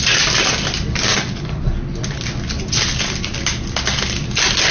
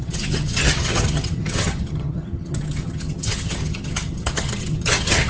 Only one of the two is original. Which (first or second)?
first